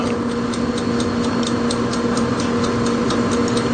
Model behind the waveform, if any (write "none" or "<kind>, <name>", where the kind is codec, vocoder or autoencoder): none